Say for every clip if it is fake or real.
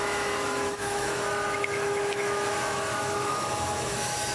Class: fake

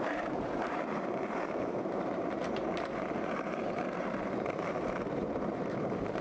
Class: fake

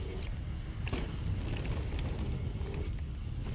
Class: real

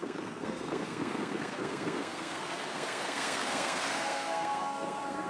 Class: fake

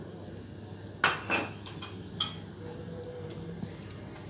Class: real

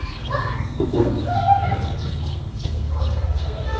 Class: fake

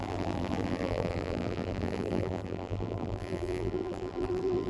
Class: fake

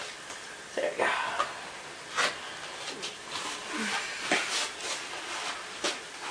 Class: real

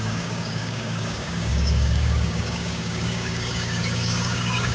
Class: fake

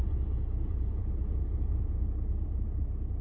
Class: real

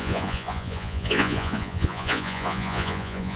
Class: fake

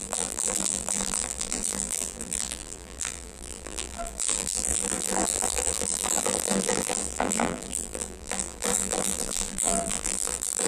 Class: fake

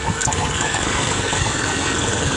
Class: fake